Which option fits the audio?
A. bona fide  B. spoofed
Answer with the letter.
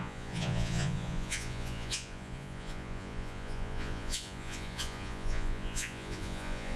B